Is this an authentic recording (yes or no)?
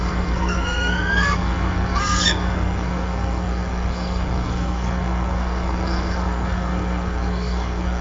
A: no